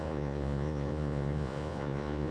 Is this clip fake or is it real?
fake